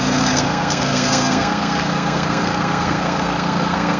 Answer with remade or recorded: remade